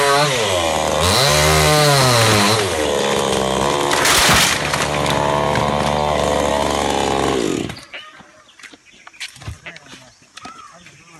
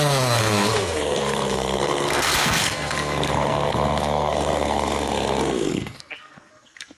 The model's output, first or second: second